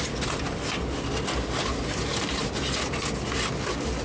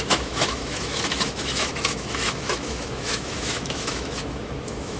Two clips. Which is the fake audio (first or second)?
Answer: second